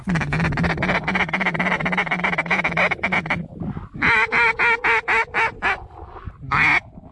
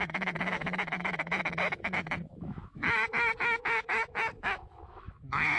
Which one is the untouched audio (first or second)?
first